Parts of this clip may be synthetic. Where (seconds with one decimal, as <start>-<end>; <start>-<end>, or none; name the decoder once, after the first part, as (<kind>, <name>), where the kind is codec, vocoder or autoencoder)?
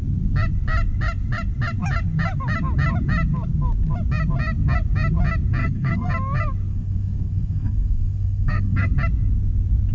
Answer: 5.6-6.1 (codec, SNAC); 6.7-8.9